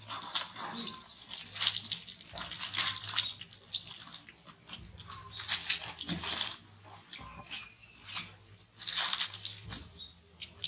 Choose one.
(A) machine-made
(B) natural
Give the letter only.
B